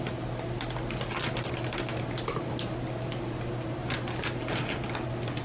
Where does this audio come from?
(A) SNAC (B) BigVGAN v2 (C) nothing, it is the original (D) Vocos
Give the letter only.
C